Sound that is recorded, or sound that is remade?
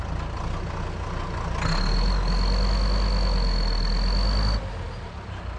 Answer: recorded